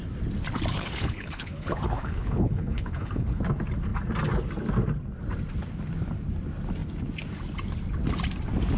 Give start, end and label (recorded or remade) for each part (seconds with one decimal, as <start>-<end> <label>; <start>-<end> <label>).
0.0-0.7 recorded; 0.7-3.4 remade; 3.4-8.8 recorded

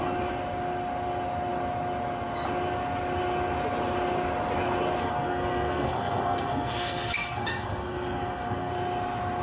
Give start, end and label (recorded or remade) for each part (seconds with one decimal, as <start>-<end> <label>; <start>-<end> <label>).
0.0-5.0 recorded; 5.0-8.7 remade; 8.7-9.4 recorded

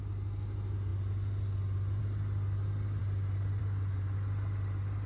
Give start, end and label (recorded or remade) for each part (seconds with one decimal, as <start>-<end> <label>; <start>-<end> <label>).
0.0-5.1 recorded

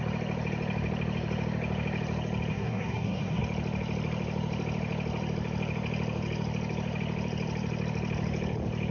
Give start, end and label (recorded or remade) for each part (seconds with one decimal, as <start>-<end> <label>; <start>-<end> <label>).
0.0-2.5 recorded; 2.5-3.4 remade; 3.4-8.9 recorded

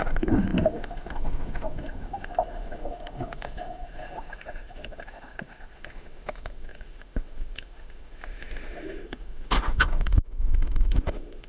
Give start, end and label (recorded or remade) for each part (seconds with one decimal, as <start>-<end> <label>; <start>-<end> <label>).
0.0-11.5 remade